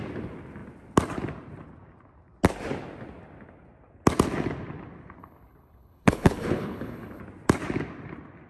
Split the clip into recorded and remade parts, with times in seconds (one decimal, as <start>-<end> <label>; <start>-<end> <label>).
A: 0.0-5.2 recorded; 5.2-7.2 remade; 7.2-8.5 recorded